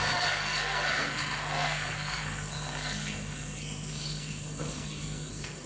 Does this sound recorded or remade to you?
remade